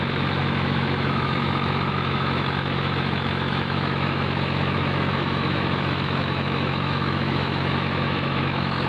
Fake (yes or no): yes